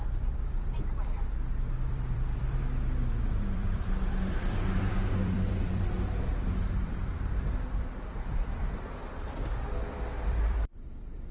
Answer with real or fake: fake